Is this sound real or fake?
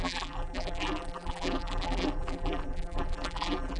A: fake